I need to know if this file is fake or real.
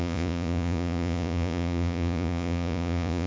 fake